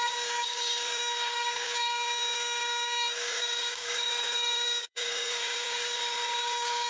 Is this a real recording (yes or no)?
no